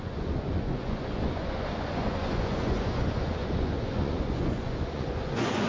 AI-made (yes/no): yes